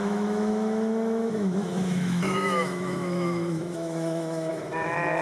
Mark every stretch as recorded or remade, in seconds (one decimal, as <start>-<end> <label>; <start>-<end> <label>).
0.0-5.2 remade